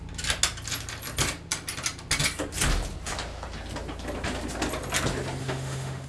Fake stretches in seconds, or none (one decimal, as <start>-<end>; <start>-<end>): 5.4-6.1